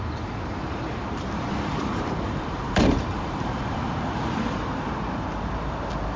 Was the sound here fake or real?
fake